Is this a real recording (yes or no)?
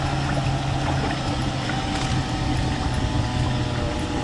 yes